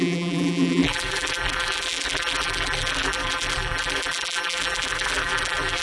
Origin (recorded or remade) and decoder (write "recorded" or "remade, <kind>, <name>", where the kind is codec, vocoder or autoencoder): remade, vocoder, BigVGAN v2